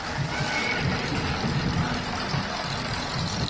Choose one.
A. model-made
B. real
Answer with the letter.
B